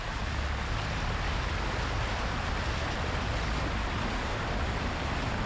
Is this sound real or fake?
real